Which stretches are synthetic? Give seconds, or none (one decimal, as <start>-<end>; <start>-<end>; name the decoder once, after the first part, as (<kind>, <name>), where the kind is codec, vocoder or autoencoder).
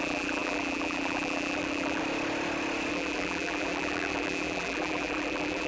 0.0-2.0 (vocoder, BigVGAN v2); 2.9-5.7